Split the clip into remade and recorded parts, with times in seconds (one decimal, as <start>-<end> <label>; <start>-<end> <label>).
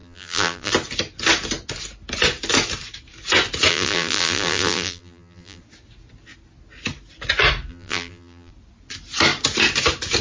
0.0-0.7 remade; 0.7-3.7 recorded; 3.7-5.6 remade; 5.6-7.7 recorded; 7.7-8.5 remade; 8.5-10.2 recorded